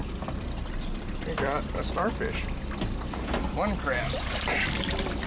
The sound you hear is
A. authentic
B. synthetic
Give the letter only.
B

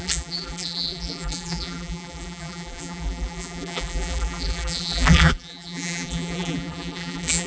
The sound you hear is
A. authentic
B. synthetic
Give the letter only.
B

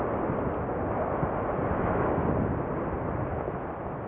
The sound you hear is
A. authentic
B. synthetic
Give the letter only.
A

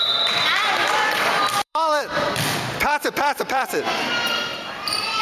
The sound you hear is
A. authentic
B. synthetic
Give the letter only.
B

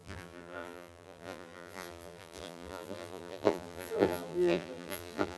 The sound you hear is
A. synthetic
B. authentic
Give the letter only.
A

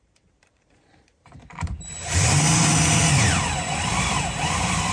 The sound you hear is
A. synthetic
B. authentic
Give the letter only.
A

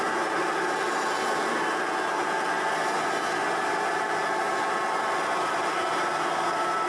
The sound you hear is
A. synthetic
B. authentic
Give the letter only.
B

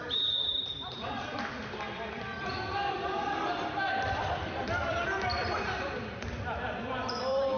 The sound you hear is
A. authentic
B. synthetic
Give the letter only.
B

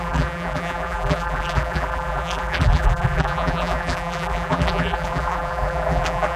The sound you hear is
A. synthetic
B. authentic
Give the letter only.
A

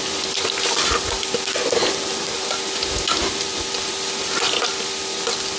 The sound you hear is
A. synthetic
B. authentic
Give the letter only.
A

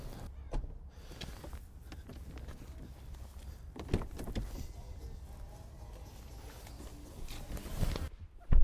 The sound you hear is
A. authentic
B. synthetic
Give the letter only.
A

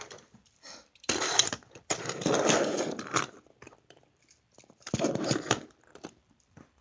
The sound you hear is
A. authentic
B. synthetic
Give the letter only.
B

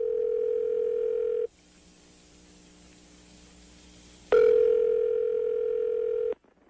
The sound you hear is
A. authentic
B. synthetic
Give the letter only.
A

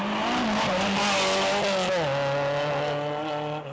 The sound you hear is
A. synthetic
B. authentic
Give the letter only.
B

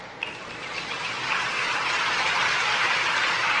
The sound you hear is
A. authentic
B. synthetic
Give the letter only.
B